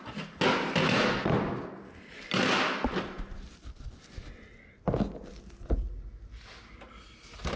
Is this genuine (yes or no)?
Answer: yes